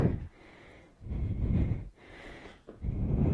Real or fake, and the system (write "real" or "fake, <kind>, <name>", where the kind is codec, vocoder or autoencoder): fake, vocoder, Vocos